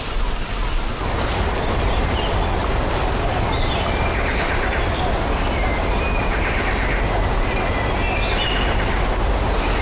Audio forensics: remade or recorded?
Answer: recorded